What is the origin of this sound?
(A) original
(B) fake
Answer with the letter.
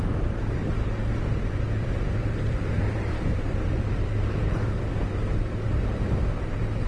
B